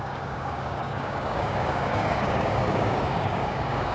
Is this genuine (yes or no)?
no